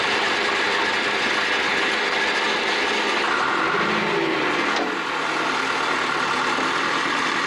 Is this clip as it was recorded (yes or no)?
yes